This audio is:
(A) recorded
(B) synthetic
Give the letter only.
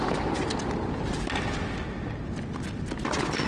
A